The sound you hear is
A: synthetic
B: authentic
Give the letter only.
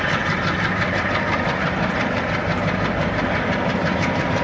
B